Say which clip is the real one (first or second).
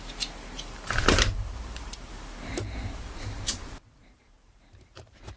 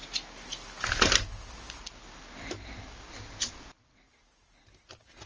second